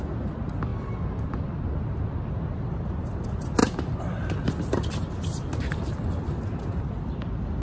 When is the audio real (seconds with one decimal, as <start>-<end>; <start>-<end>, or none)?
0.0-7.6

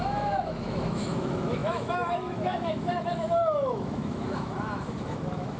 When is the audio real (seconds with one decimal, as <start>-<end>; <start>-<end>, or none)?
none

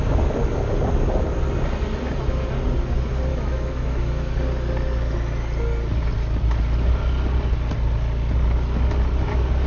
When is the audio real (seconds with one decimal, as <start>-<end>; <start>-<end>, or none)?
0.0-3.3; 4.3-9.7